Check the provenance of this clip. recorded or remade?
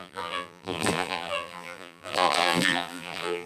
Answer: remade